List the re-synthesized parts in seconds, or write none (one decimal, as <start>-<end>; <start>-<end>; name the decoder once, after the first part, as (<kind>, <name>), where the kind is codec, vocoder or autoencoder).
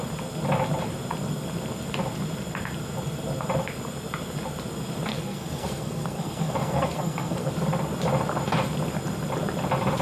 5.1-7.5 (codec, SNAC)